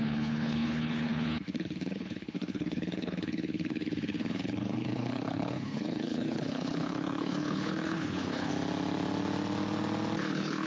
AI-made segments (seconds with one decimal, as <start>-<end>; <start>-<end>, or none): 0.0-8.5; 10.2-10.7